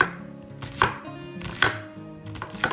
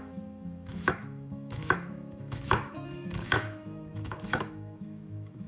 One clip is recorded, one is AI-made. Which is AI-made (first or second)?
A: second